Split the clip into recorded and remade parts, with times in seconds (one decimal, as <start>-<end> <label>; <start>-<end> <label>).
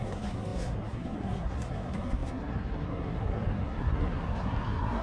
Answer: 0.0-5.0 remade